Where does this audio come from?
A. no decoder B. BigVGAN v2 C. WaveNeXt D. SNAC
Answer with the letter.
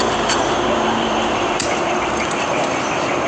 B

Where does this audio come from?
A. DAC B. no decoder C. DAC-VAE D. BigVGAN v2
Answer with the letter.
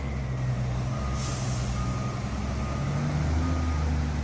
B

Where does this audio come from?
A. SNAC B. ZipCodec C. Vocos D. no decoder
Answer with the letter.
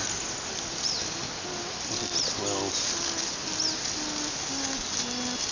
D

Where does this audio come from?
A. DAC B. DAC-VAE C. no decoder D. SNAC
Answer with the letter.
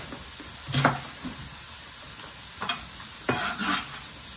C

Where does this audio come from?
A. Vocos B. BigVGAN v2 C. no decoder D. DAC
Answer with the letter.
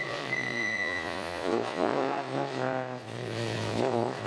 A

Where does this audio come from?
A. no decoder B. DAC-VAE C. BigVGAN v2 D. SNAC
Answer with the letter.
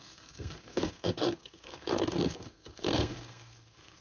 D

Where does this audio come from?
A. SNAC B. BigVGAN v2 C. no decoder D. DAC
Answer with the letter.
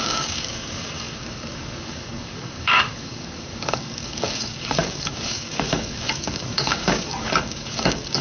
D